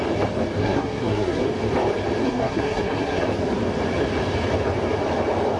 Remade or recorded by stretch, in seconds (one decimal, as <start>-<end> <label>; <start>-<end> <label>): 0.0-0.6 recorded; 0.6-1.4 remade; 1.4-2.2 recorded; 2.2-3.2 remade; 3.2-5.6 recorded